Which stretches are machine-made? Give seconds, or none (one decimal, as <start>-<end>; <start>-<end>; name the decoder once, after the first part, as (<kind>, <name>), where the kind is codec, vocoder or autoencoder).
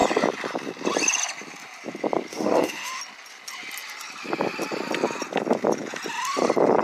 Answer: 2.3-3.0 (autoencoder, DAC-VAE)